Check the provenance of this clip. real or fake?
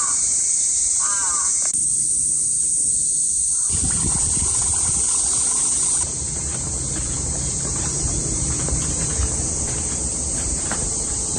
fake